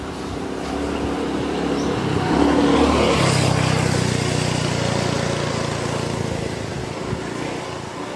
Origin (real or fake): real